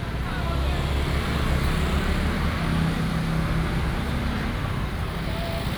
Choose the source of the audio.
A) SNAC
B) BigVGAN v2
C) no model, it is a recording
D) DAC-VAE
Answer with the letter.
C